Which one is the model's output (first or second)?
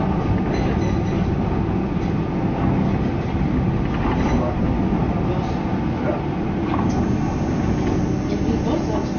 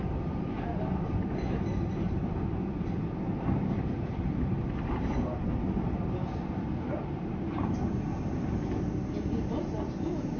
second